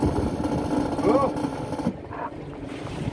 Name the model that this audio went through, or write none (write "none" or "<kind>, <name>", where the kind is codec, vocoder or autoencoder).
none